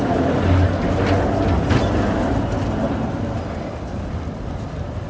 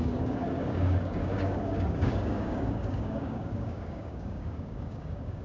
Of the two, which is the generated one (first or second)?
second